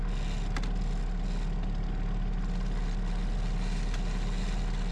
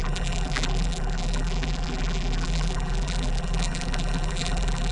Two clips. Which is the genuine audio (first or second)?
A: first